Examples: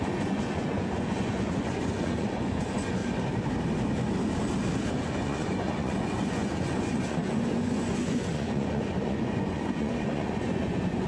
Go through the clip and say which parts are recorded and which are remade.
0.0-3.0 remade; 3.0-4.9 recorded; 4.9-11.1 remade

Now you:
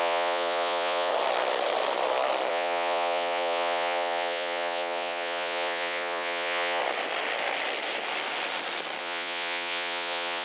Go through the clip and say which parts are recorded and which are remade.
0.0-1.1 remade; 1.1-2.5 recorded; 2.5-6.8 remade; 6.8-9.0 recorded; 9.0-10.4 remade

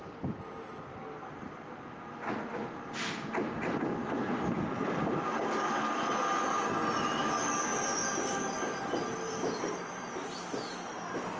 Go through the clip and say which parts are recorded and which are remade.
0.0-11.4 recorded